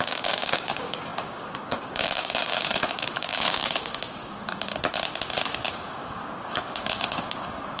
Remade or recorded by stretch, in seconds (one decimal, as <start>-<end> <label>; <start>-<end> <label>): 0.0-4.7 remade; 4.7-5.7 recorded; 5.7-7.8 remade